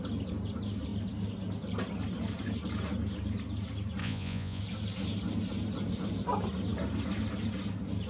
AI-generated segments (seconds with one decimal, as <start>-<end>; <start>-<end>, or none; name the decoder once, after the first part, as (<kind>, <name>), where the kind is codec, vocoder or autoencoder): 4.0-4.6 (vocoder, Vocos)